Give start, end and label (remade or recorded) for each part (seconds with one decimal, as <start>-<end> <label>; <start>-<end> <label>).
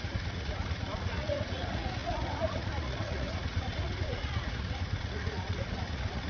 0.0-6.3 remade